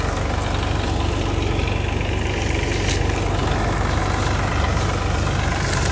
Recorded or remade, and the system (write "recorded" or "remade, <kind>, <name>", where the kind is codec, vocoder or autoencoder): recorded